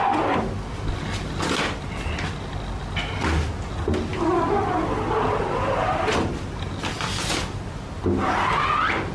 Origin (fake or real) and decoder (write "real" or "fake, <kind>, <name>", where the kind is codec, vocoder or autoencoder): real